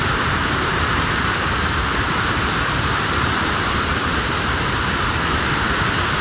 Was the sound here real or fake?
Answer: fake